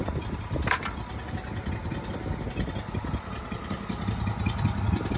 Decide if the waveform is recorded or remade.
recorded